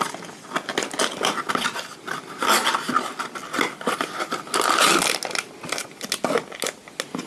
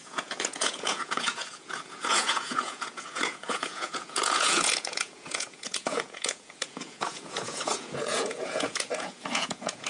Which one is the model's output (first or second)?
second